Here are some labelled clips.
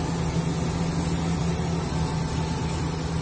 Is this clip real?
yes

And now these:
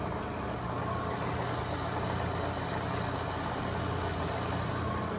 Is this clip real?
yes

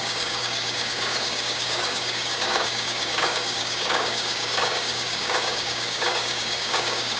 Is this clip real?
no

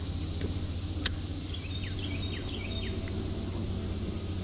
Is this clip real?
yes